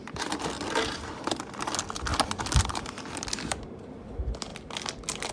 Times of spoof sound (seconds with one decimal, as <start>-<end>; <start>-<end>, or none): none